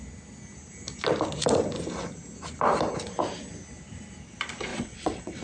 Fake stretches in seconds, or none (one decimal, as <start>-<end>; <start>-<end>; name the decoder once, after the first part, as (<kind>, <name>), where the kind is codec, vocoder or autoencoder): 4.7-5.4 (vocoder, WaveNeXt)